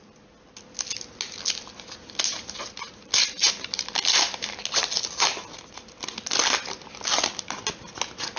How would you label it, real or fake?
real